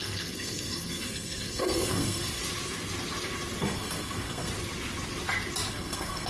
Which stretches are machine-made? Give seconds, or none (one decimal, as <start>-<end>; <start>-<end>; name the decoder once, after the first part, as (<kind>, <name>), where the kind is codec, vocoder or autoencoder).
0.0-2.4 (codec, SNAC); 3.6-4.5; 5.7-6.3

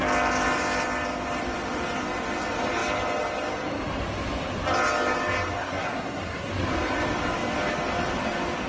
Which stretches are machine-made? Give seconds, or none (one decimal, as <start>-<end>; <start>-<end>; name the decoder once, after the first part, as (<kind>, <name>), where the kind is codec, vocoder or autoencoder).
5.6-6.5 (codec, SNAC)

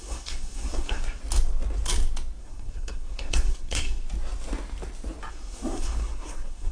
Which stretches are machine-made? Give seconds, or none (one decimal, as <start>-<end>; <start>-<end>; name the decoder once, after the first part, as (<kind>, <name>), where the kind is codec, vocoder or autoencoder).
0.0-1.2 (codec, SNAC); 2.4-4.0; 5.3-6.7